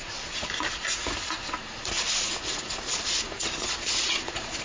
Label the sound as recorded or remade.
remade